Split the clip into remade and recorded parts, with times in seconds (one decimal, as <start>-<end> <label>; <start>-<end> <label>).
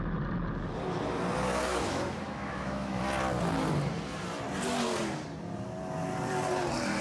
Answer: 0.0-1.7 recorded; 1.7-3.0 remade; 3.0-7.0 recorded